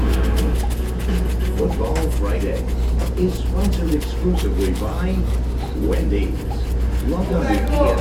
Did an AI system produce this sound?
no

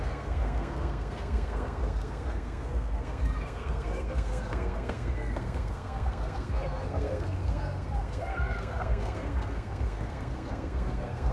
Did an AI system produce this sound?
yes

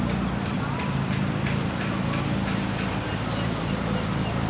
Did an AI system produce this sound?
no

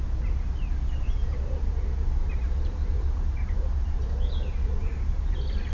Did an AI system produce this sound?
yes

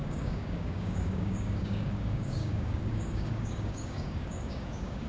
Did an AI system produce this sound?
yes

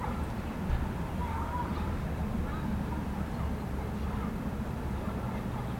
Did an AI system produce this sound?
no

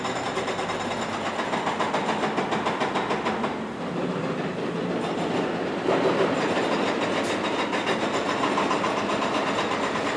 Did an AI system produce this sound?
no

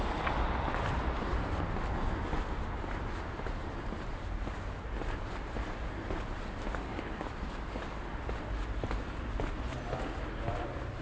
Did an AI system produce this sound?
no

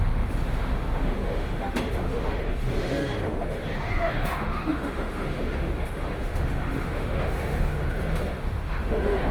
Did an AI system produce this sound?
yes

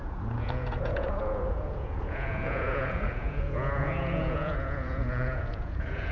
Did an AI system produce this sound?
yes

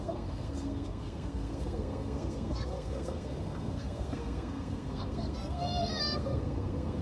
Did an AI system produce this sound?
yes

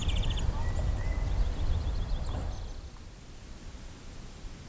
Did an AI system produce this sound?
no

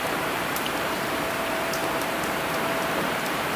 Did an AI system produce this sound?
yes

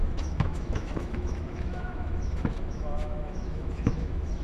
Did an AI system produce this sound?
yes